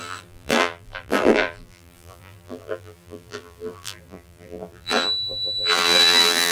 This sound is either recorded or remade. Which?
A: remade